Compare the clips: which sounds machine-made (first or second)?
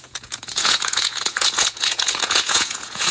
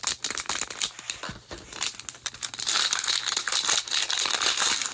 first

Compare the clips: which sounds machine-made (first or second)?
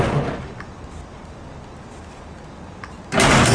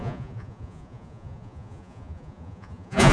second